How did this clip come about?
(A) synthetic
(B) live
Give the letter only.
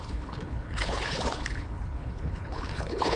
A